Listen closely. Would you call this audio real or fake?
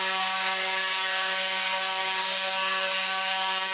fake